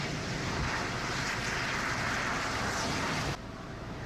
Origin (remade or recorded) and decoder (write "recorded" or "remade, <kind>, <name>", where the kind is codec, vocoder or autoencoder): recorded